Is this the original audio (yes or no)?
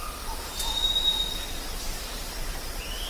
yes